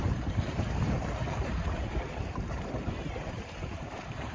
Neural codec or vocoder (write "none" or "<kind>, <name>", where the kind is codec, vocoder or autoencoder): vocoder, BigVGAN v2